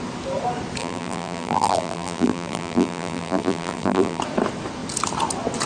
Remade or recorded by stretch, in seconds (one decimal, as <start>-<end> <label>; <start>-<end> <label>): 0.0-0.8 recorded; 0.8-4.2 remade; 4.2-5.7 recorded